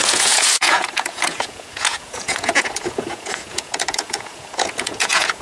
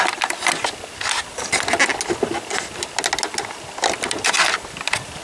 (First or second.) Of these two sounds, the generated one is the first